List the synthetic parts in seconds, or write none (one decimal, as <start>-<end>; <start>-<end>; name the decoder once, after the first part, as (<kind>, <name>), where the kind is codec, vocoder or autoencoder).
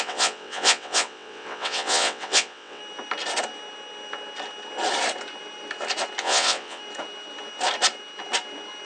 0.0-2.8 (vocoder, WaveNeXt); 6.2-6.8